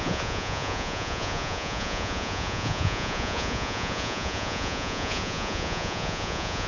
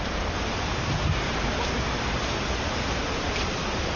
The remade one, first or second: first